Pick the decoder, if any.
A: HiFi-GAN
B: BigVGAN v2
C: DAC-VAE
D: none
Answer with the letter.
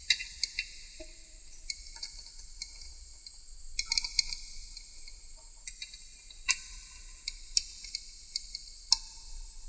D